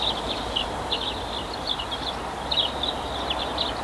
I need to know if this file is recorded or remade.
recorded